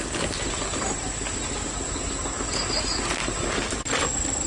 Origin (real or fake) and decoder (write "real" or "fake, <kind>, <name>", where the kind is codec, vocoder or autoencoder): real